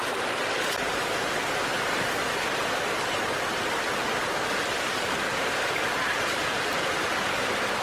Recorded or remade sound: recorded